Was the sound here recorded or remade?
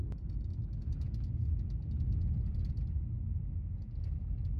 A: recorded